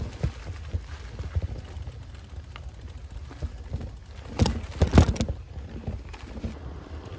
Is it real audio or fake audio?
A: real